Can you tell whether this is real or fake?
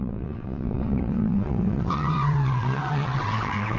fake